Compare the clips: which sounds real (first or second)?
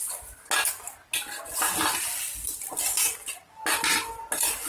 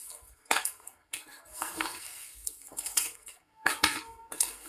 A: first